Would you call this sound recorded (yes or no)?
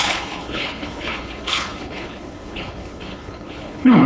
no